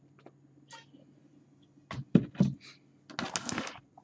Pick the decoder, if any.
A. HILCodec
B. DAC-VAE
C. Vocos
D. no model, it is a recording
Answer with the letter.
D